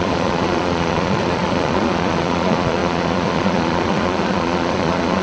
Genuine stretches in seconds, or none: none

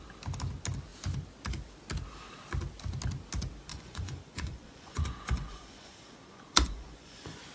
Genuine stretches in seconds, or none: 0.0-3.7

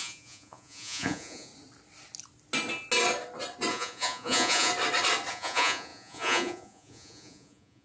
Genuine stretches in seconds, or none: 1.5-3.7; 4.7-5.3

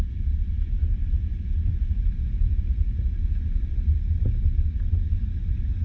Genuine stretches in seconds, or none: 0.0-5.8

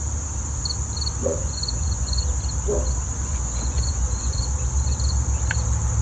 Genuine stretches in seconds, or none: 0.0-1.2; 2.2-3.1; 4.4-6.0

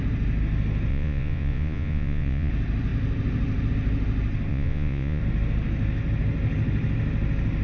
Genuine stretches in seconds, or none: 0.0-0.9; 2.5-4.5; 5.2-7.6